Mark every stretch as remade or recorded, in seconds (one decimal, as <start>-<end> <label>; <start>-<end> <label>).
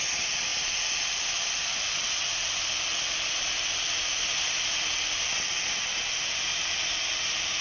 0.0-7.6 recorded